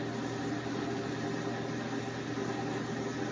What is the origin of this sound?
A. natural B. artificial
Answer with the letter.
A